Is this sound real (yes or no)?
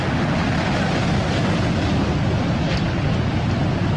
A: yes